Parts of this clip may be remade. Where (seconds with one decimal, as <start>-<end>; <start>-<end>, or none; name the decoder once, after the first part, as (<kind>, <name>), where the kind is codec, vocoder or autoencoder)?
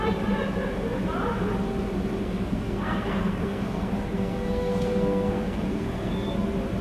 2.2-6.3 (codec, SNAC)